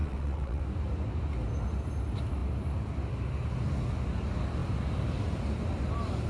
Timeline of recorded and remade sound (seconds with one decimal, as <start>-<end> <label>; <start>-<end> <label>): 0.0-0.6 remade; 0.6-6.3 recorded